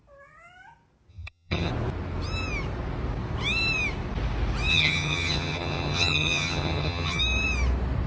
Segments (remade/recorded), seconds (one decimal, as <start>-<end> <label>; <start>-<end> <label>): 0.0-1.1 recorded; 1.1-1.7 remade; 1.7-4.7 recorded; 4.7-7.2 remade; 7.2-8.1 recorded